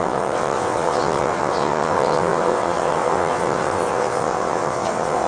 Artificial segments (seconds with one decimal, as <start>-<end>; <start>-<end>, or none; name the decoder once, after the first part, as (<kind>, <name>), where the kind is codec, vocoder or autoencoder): 0.0-5.3 (vocoder, WaveNeXt)